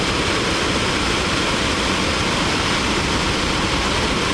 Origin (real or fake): fake